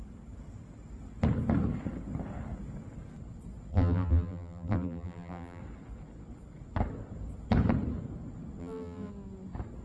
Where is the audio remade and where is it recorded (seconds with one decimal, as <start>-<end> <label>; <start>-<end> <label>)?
0.0-3.7 recorded; 3.7-5.6 remade; 5.6-8.6 recorded; 8.6-9.1 remade; 9.1-9.8 recorded